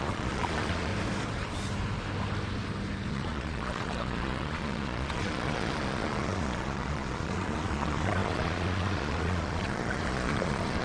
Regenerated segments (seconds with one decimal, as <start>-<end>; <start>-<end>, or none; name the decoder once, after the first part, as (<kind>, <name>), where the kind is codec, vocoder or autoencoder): 0.0-0.9 (vocoder, Vocos); 3.1-10.8